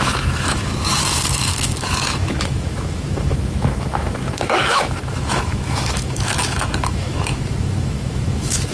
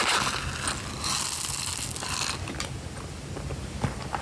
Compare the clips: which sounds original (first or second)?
second